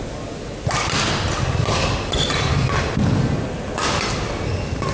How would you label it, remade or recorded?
recorded